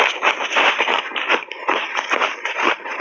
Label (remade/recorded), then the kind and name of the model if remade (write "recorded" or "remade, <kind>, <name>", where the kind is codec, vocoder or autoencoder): remade, vocoder, BigVGAN v2